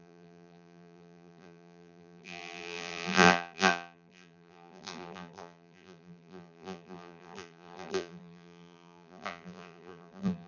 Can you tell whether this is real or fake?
fake